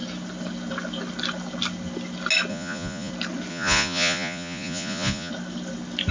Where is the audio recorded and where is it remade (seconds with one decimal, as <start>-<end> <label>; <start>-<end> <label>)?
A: 0.0-2.5 recorded; 2.5-3.1 remade; 3.1-3.5 recorded; 3.5-5.3 remade; 5.3-6.1 recorded